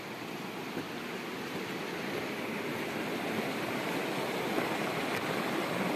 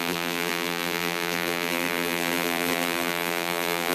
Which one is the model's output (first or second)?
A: second